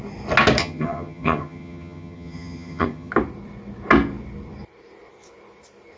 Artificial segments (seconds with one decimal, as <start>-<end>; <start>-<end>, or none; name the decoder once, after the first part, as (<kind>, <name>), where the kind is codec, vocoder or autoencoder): 0.6-3.1 (vocoder, HiFi-GAN)